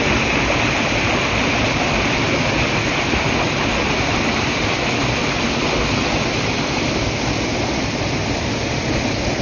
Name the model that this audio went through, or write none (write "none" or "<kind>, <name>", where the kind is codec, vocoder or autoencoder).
none